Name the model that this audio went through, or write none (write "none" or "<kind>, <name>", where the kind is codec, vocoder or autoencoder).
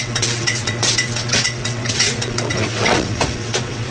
vocoder, WaveNeXt